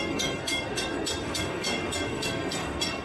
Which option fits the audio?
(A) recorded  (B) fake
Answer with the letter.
B